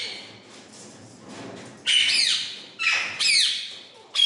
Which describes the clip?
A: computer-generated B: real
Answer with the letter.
B